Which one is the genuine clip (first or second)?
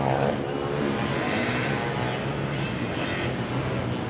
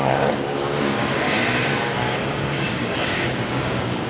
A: first